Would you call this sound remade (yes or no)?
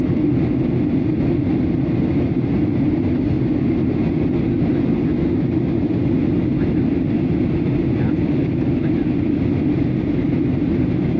no